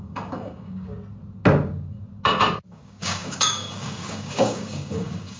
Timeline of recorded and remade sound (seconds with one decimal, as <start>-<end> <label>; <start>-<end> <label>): 0.0-0.9 remade; 0.9-2.7 recorded; 2.7-5.4 remade